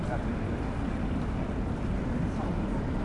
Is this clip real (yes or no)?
no